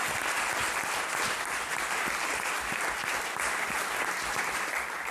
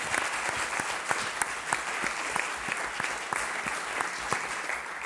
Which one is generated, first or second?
first